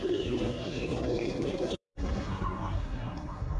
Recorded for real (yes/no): no